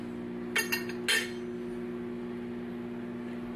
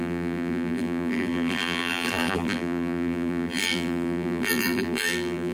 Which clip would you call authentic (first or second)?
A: first